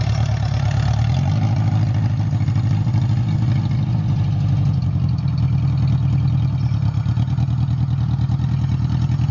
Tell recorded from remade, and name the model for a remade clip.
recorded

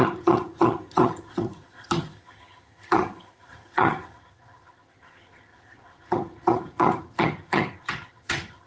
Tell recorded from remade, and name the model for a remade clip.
remade, vocoder, HiFi-GAN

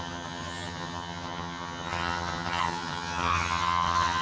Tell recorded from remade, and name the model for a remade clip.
remade, vocoder, HiFi-GAN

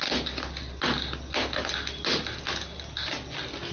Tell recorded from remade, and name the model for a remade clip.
recorded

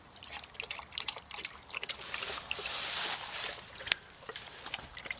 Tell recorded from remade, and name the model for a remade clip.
recorded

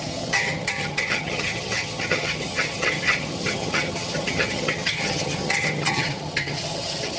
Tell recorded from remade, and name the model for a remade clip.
remade, vocoder, HiFi-GAN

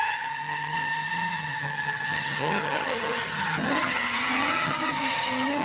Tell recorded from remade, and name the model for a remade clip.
remade, vocoder, HiFi-GAN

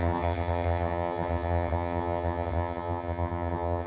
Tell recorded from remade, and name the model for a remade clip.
remade, vocoder, HiFi-GAN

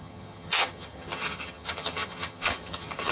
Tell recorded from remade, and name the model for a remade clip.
remade, vocoder, HiFi-GAN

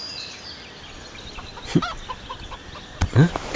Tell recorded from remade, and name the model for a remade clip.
recorded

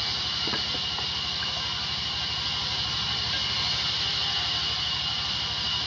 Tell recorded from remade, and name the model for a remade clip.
recorded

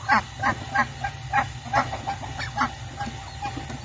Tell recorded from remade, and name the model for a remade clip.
recorded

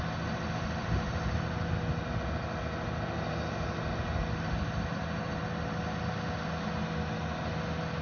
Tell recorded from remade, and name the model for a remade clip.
recorded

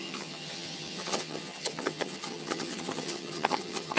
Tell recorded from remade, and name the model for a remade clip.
remade, vocoder, HiFi-GAN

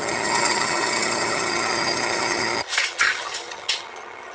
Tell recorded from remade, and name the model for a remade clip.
remade, vocoder, HiFi-GAN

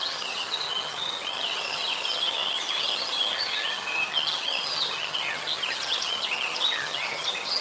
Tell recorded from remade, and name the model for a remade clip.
remade, vocoder, HiFi-GAN